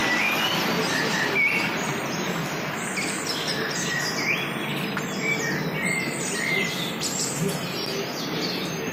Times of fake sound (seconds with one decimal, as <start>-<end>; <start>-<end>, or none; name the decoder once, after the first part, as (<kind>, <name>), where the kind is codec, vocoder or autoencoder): 4.7-5.4 (vocoder, BigVGAN v2)